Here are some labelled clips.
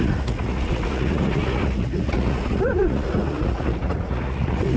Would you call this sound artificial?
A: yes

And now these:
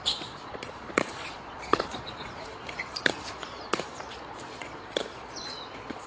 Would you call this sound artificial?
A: yes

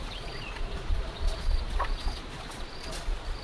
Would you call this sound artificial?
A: yes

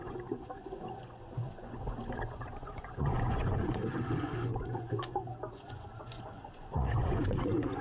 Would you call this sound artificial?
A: yes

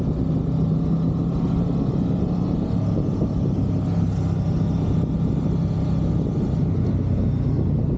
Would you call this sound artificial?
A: no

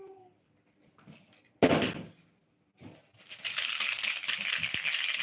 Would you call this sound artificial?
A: no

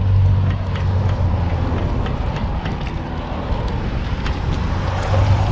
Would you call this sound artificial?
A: no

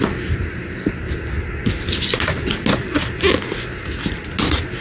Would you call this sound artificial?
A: no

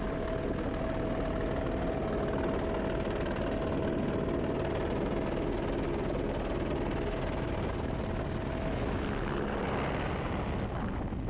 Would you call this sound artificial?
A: no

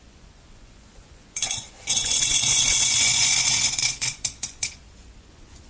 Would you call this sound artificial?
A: yes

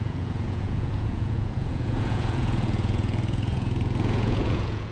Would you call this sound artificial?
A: yes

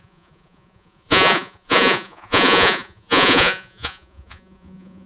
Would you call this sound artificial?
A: yes